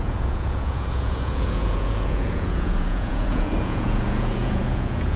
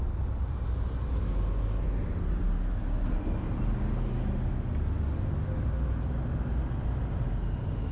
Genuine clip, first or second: second